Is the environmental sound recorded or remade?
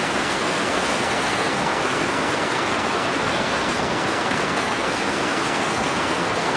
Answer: remade